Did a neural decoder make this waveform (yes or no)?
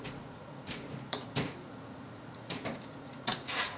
yes